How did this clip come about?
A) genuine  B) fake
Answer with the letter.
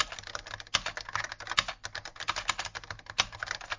A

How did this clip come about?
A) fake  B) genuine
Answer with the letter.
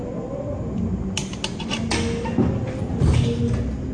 B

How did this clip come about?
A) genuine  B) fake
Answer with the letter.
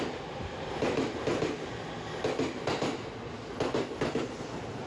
A